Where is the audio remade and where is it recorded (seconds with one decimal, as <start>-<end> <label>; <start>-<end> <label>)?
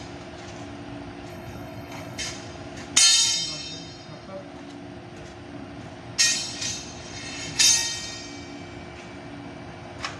0.0-1.3 recorded; 1.3-2.2 remade; 2.2-10.2 recorded